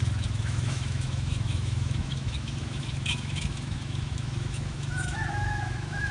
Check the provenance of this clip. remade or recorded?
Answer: remade